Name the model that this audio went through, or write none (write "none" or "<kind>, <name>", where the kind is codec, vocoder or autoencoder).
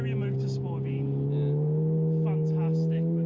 none